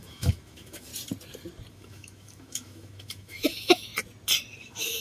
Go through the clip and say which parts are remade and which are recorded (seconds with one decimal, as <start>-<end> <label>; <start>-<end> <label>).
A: 0.0-0.9 remade; 0.9-1.7 recorded; 1.7-3.9 remade; 3.9-4.6 recorded; 4.6-5.0 remade